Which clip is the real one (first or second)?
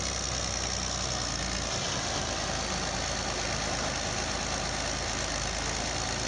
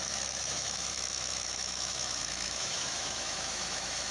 first